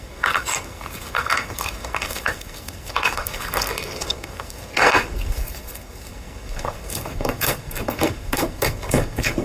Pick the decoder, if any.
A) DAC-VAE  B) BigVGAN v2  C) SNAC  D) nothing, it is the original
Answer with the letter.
C